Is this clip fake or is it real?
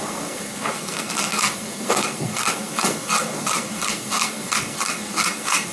fake